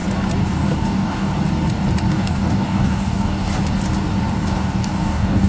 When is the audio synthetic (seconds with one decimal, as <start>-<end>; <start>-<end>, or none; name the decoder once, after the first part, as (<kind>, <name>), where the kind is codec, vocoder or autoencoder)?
0.5-1.3 (codec, DAC); 2.1-3.5; 4.3-5.5